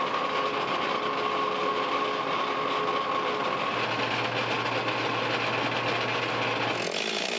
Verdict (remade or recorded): recorded